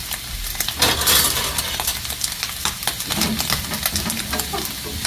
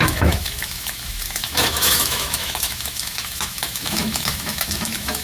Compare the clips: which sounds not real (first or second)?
second